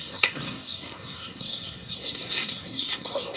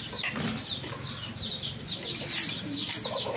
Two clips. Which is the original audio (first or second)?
second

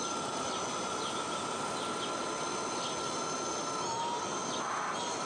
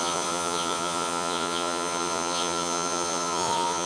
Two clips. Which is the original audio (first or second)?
first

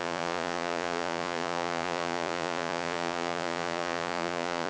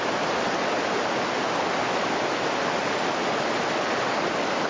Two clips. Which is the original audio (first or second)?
second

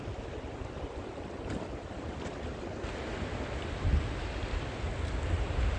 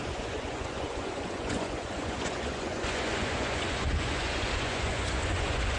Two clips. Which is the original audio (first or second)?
first